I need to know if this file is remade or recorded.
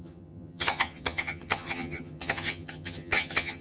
remade